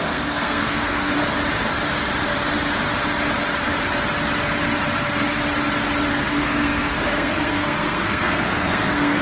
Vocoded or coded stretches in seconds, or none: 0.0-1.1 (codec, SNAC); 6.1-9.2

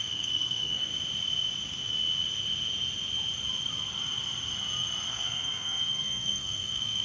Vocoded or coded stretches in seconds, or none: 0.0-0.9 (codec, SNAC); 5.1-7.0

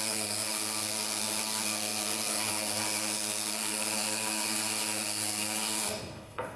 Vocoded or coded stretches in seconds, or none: 0.0-6.6 (codec, SNAC)